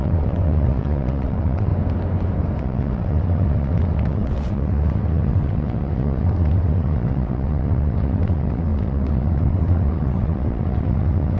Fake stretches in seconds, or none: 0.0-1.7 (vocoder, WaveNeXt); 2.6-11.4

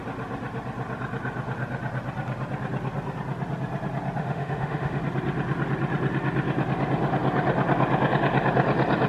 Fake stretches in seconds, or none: 4.2-5.0 (autoencoder, DAC-VAE)